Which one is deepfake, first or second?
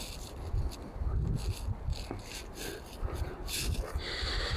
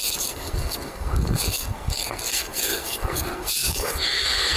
second